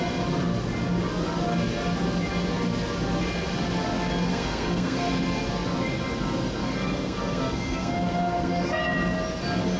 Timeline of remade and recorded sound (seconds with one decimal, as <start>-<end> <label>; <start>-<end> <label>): 0.0-4.3 recorded; 4.3-5.1 remade; 5.1-6.6 recorded; 6.6-8.8 remade; 8.8-9.8 recorded